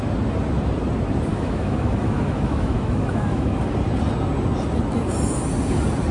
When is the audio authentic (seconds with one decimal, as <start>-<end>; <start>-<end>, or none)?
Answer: 0.0-1.3; 3.6-6.1